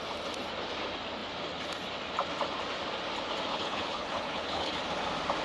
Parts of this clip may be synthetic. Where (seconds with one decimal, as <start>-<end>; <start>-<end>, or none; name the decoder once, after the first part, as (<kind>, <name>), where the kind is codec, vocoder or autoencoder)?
3.5-4.8 (codec, HILCodec)